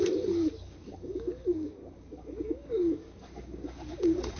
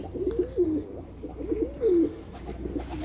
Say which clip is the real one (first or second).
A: second